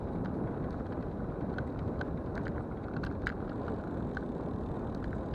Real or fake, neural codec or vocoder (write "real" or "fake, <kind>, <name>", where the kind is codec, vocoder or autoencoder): real